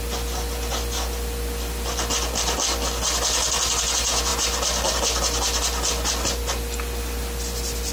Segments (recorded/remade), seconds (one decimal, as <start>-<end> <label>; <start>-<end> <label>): 0.0-7.9 recorded